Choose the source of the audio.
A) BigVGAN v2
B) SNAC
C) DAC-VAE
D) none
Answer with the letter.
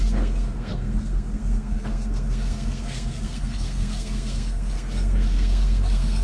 B